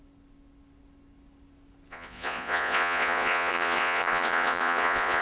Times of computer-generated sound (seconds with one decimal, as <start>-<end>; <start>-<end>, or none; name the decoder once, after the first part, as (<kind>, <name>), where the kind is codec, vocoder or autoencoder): 1.9-5.2 (vocoder, Vocos)